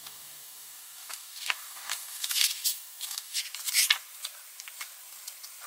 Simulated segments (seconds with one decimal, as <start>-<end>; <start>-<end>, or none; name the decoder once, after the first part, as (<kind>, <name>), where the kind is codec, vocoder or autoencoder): 0.0-3.4 (codec, DAC)